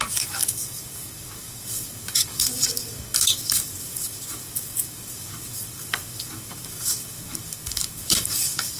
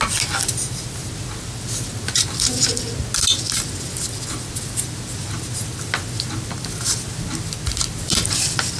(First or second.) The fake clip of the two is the first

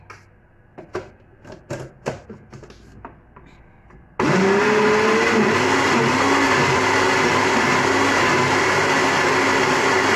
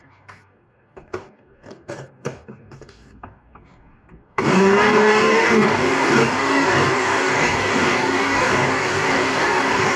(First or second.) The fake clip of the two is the second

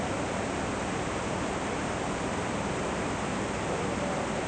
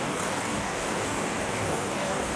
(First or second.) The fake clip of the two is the second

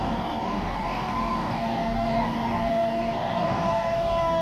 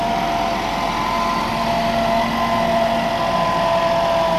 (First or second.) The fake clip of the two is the first